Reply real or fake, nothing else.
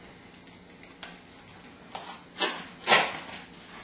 real